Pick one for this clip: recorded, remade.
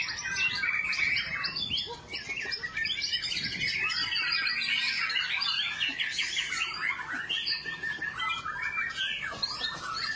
recorded